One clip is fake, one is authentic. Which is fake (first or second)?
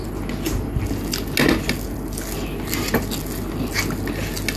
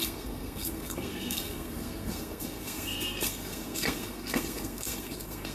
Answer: second